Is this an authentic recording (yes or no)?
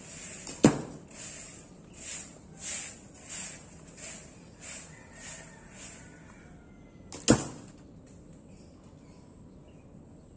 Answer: yes